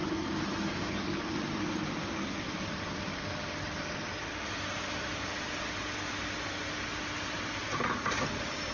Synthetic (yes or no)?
no